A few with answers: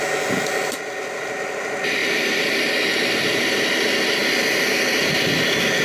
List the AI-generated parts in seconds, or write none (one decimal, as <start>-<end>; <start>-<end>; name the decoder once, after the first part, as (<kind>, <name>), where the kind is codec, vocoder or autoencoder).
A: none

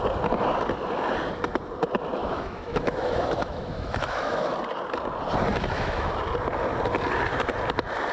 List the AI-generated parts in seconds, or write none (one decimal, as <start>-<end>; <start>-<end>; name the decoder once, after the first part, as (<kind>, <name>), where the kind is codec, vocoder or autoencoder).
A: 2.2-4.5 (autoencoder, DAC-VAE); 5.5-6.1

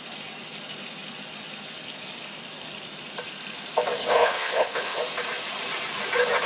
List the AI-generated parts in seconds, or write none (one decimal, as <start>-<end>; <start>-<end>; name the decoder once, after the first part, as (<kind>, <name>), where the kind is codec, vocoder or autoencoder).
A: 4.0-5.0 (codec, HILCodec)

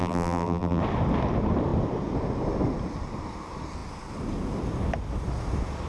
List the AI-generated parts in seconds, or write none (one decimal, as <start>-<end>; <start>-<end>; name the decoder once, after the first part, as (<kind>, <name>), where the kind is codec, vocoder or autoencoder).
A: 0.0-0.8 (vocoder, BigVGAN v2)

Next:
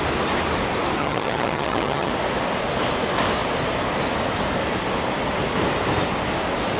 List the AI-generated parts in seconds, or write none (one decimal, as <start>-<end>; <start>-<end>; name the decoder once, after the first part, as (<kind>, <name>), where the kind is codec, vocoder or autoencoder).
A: 1.0-2.1 (vocoder, HiFi-GAN)

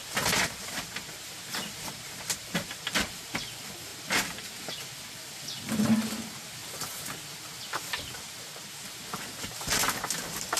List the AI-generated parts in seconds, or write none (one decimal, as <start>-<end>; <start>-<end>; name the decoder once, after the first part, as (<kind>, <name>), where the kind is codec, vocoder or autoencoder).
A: none